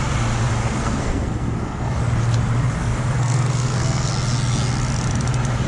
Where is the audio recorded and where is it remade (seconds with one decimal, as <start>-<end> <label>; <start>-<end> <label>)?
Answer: 0.0-0.6 recorded; 0.6-2.0 remade; 2.0-2.8 recorded; 2.8-4.1 remade; 4.1-5.7 recorded